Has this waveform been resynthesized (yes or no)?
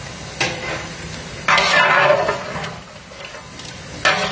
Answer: no